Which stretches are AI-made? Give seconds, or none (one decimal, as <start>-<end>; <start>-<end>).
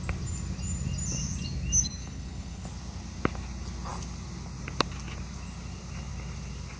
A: 2.0-2.7